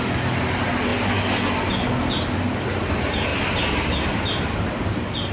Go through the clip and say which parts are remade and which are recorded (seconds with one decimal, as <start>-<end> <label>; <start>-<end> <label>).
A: 0.0-5.3 recorded